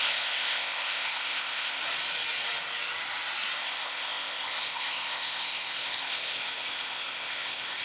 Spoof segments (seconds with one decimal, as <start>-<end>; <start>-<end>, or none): 0.0-1.8; 3.6-7.8